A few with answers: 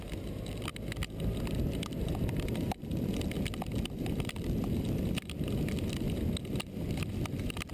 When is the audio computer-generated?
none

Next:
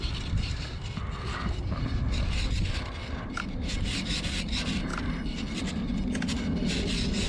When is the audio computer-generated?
none

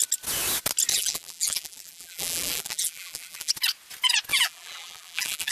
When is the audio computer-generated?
0.9-3.5 (vocoder, BigVGAN v2); 4.3-5.5